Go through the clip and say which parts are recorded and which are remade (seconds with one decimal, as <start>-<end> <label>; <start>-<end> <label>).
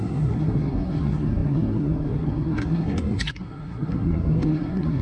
0.0-5.0 remade